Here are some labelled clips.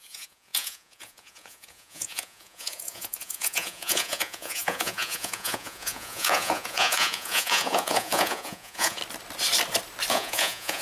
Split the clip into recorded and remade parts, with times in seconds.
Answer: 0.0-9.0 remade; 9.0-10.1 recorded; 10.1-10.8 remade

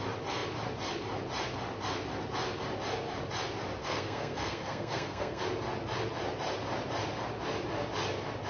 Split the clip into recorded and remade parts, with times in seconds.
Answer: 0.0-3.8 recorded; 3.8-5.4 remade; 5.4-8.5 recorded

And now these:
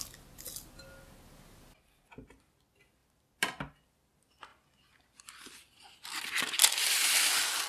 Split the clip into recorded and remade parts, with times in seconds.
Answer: 0.0-3.0 recorded; 3.0-4.1 remade; 4.1-4.5 recorded; 4.5-6.2 remade; 6.2-7.7 recorded

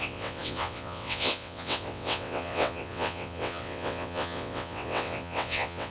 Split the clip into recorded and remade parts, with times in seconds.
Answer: 0.0-5.9 remade